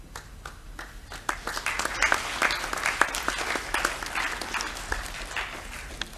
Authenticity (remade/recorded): recorded